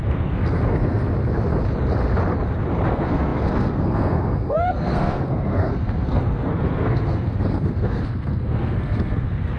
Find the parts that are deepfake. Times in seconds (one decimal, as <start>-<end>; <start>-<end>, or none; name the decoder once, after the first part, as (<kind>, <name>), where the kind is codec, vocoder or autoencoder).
0.0-1.0 (codec, SNAC); 2.9-9.6